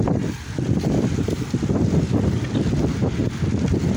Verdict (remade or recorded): recorded